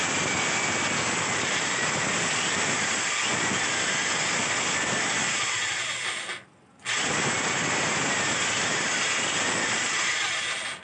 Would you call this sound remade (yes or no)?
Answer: no